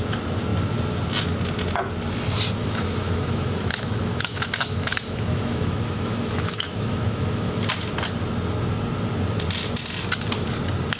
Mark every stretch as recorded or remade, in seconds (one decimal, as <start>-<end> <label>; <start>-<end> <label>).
0.0-2.6 recorded; 2.6-7.6 remade; 7.6-11.0 recorded